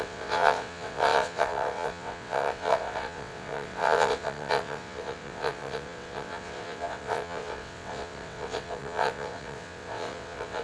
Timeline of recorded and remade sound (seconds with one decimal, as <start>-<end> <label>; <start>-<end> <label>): 0.0-10.6 remade